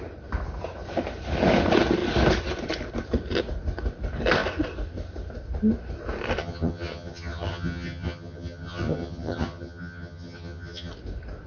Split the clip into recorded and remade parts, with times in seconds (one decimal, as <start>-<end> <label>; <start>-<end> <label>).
0.0-6.4 recorded; 6.4-10.9 remade; 10.9-11.5 recorded